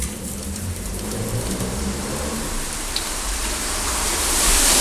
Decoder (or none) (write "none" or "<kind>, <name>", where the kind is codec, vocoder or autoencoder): vocoder, BigVGAN v2